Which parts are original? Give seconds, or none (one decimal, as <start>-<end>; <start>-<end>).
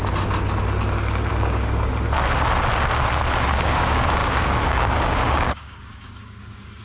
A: 0.0-1.3; 1.9-3.5